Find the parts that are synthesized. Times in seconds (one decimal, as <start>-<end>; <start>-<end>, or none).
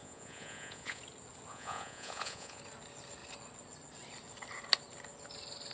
0.0-1.0; 1.5-2.6